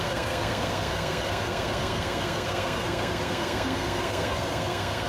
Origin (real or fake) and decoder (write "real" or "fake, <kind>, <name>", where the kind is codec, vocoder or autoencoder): fake, codec, SNAC